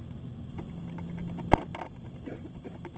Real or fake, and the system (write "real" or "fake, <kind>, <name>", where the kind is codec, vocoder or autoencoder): real